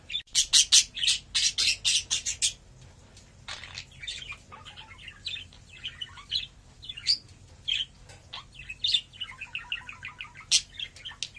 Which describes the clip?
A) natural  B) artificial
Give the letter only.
A